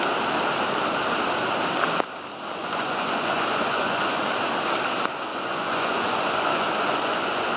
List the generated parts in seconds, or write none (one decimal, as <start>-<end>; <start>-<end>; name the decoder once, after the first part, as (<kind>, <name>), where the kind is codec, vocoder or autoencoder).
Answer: 2.6-4.2 (vocoder, Vocos); 5.3-7.6